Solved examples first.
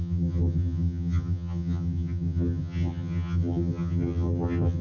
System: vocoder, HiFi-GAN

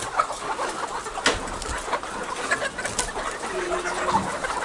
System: none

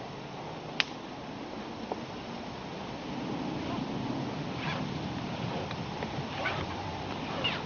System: none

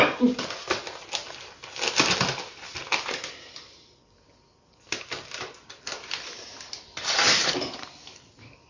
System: none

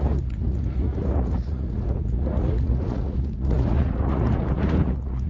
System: vocoder, Vocos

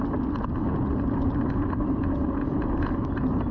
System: none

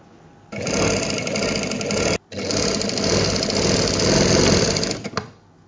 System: none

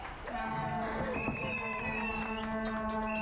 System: none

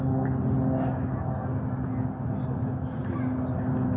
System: none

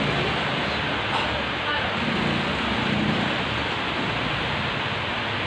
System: none